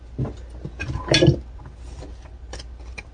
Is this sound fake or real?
real